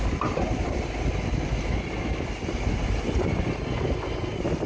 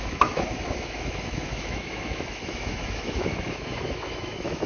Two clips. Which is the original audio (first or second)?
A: first